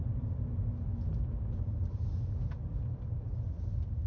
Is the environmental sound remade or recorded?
recorded